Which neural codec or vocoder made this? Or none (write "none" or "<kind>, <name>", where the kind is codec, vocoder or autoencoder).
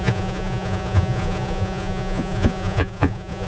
vocoder, Vocos